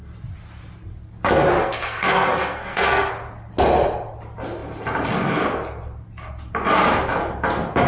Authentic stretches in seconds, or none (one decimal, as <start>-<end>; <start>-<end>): 0.0-1.6; 3.1-7.9